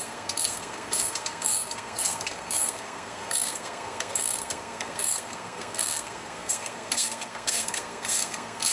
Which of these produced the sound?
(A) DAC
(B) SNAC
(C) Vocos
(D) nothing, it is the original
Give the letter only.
B